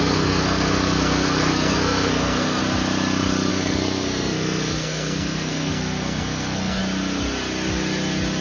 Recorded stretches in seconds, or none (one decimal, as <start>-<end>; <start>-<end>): 2.6-3.5; 6.8-8.4